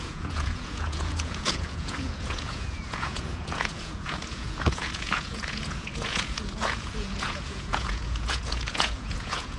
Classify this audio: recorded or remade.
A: remade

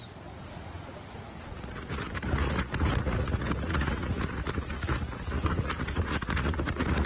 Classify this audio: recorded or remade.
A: remade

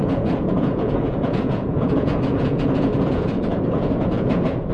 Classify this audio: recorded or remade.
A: remade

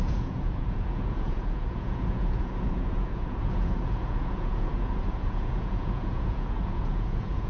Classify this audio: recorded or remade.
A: remade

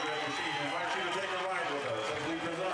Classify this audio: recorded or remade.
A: recorded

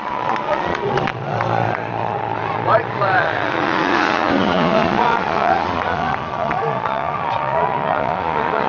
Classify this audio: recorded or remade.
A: remade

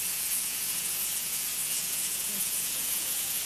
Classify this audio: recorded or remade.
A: remade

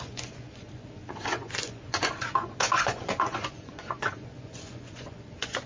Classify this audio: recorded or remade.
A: remade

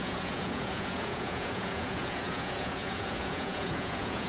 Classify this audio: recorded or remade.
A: remade